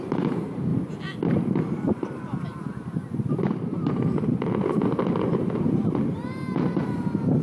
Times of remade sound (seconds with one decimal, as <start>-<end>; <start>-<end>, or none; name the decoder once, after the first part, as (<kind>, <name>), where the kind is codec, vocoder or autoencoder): 0.0-0.7 (vocoder, BigVGAN v2); 1.3-7.4